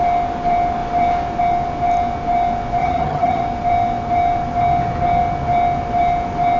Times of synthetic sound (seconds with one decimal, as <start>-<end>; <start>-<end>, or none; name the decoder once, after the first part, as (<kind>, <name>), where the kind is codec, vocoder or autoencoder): 2.8-3.4 (vocoder, HiFi-GAN)

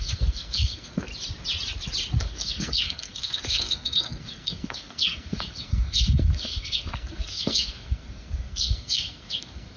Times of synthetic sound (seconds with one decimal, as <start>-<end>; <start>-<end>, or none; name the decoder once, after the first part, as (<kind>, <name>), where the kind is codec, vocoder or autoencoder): 0.0-1.1 (codec, SNAC); 2.2-9.8

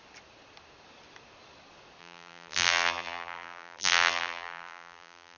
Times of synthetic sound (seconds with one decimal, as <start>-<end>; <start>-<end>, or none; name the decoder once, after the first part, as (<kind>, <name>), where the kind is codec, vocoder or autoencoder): 2.0-5.4 (vocoder, BigVGAN v2)

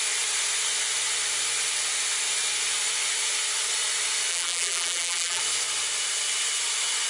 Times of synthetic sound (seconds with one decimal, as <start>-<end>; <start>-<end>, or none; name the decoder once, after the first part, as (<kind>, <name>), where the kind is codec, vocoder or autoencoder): 4.3-5.4 (vocoder, BigVGAN v2)

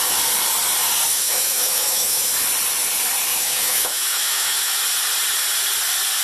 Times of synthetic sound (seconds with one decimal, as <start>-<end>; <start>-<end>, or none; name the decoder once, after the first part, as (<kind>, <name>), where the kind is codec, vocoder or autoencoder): 1.1-2.3 (autoencoder, DAC-VAE); 3.3-4.8

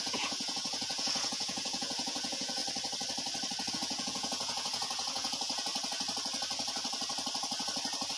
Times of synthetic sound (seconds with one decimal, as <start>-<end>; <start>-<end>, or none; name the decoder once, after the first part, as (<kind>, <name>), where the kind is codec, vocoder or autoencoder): 0.0-2.6 (vocoder, Vocos); 3.7-5.7